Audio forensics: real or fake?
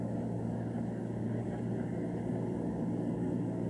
fake